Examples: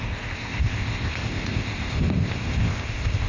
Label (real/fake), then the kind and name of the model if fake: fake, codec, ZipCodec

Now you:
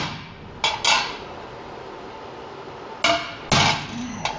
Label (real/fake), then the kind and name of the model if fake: real